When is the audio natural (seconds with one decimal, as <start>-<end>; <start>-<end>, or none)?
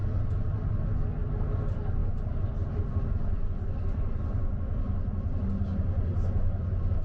0.0-2.0; 5.4-7.0